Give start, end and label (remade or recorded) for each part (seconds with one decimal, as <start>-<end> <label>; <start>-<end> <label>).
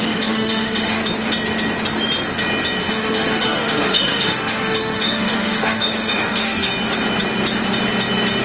0.0-1.0 remade; 1.0-2.9 recorded; 2.9-6.7 remade; 6.7-8.4 recorded